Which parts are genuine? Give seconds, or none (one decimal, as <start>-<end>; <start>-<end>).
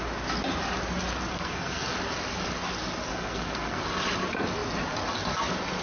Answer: 0.0-1.3; 1.9-3.1; 3.8-5.8